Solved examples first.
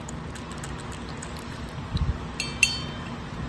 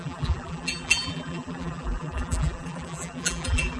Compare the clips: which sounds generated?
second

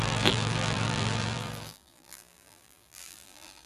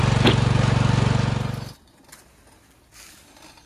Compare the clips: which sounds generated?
first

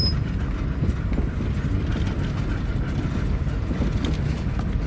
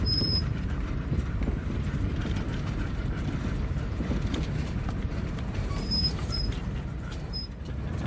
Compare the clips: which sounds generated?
second